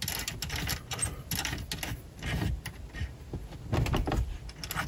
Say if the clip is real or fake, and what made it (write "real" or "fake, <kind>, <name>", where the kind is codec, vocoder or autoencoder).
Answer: real